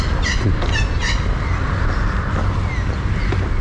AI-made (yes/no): no